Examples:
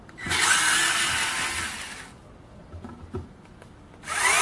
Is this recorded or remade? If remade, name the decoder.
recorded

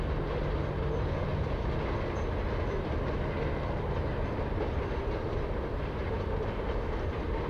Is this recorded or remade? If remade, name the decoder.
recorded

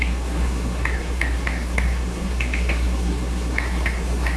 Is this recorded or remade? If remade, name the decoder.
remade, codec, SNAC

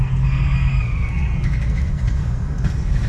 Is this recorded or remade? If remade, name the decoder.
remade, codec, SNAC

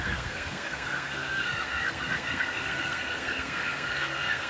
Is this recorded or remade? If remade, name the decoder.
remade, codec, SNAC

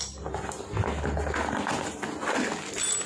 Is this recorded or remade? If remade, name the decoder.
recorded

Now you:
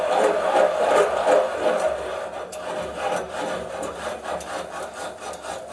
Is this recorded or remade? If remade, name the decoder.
recorded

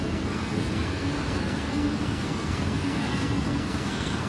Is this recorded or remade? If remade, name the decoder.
remade, codec, SNAC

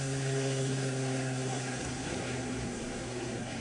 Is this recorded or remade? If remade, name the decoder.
remade, codec, SNAC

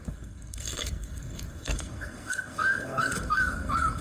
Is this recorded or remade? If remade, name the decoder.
remade, codec, SNAC